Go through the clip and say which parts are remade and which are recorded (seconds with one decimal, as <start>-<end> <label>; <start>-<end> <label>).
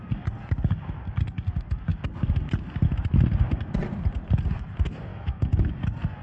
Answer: 0.0-5.1 recorded; 5.1-5.7 remade; 5.7-6.2 recorded